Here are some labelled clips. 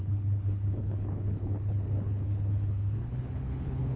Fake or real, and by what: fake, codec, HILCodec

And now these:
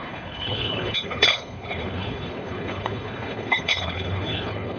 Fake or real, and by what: fake, codec, HILCodec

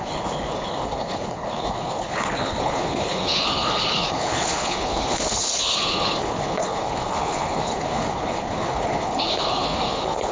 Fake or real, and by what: fake, codec, HILCodec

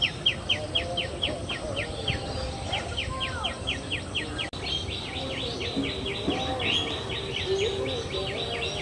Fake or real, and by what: real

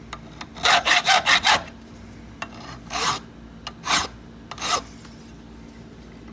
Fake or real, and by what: real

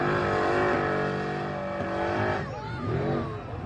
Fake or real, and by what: real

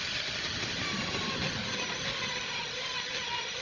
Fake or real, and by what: real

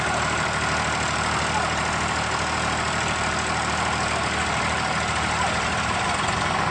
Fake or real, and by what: real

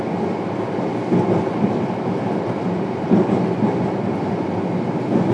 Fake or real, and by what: real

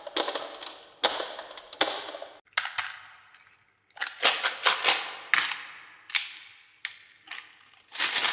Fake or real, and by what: real